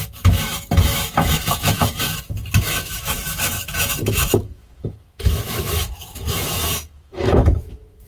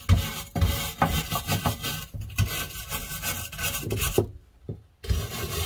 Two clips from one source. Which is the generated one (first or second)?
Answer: first